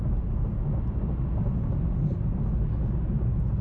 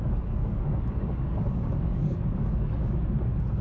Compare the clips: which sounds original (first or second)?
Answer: first